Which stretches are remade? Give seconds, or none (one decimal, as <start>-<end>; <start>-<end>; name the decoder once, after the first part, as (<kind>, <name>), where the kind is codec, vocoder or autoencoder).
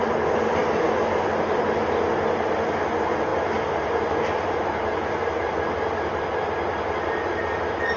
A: none